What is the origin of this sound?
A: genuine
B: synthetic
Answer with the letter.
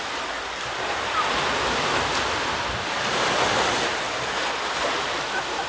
A